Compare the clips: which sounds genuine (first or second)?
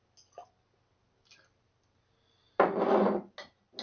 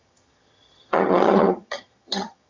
first